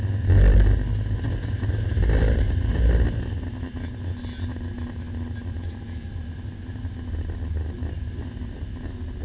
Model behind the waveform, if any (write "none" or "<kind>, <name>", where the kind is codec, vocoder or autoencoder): none